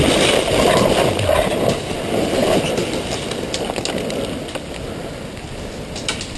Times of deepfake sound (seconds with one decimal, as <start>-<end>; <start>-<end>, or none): none